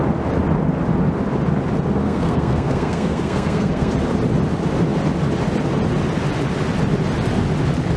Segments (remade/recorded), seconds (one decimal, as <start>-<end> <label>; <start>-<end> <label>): 0.0-2.0 recorded; 2.0-3.9 remade; 3.9-8.0 recorded